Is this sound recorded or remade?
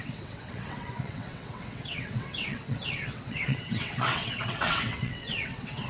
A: remade